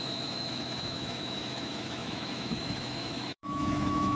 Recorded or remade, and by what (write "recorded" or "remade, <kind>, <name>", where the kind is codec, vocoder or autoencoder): remade, autoencoder, DAC-VAE